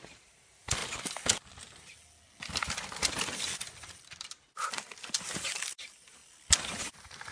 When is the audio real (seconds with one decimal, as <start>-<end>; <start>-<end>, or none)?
0.8-5.2; 6.2-6.8